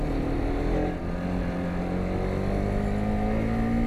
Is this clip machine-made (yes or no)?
no